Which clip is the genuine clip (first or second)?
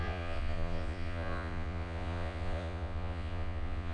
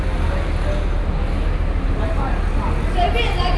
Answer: second